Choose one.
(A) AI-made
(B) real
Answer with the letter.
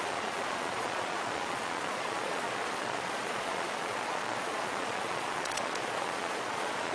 A